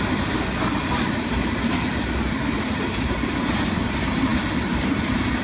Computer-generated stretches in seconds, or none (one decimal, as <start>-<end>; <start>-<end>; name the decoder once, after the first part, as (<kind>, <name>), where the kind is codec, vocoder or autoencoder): none